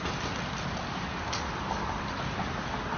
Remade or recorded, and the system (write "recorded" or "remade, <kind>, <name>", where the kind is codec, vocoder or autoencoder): recorded